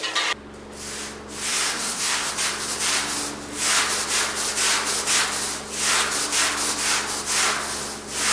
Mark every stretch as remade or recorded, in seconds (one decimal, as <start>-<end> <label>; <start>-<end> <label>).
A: 0.0-1.5 recorded; 1.5-2.3 remade; 2.3-8.3 recorded